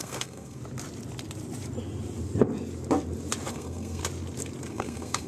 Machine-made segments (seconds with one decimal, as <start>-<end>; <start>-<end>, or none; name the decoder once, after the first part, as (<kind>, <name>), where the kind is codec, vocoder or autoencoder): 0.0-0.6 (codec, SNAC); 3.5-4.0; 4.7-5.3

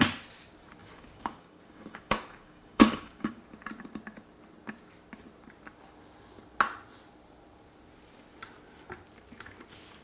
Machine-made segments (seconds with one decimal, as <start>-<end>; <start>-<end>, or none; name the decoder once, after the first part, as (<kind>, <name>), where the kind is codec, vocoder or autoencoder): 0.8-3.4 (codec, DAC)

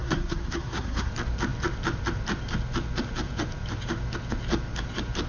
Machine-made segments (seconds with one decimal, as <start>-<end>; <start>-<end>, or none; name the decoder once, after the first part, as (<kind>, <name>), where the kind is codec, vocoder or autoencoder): 0.0-1.1 (codec, SNAC)

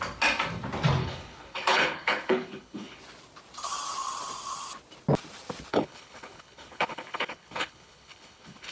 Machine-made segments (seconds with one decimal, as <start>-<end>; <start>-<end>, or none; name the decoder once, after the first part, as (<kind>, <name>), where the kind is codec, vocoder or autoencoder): 1.0-3.0 (codec, HILCodec); 5.7-8.7